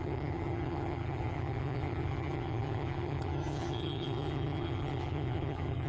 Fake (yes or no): yes